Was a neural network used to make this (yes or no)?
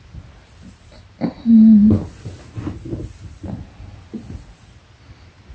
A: no